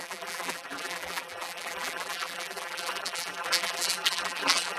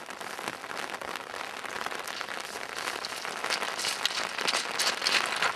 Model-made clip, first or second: first